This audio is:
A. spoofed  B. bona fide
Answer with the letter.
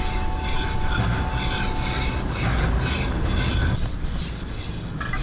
B